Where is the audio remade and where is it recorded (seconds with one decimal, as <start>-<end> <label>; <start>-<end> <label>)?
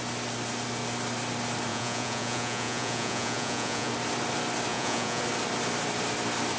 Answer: 0.0-1.7 recorded; 1.7-3.9 remade; 3.9-4.7 recorded; 4.7-5.2 remade; 5.2-6.6 recorded